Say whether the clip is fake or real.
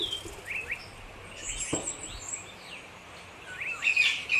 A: real